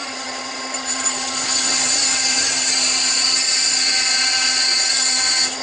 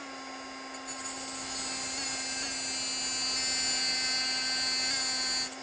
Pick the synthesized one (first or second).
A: first